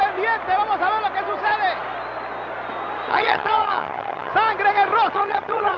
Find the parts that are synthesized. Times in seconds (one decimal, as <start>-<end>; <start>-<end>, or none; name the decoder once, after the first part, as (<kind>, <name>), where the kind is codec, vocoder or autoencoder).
3.1-4.3 (vocoder, HiFi-GAN); 5.1-5.8